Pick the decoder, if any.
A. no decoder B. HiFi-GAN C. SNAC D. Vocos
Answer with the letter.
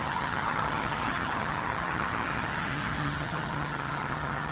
B